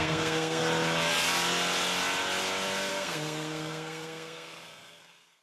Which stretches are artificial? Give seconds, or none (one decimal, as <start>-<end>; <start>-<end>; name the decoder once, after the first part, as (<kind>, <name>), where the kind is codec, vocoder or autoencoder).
0.0-0.6 (codec, SNAC); 2.9-5.4